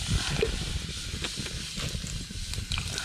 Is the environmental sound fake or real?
real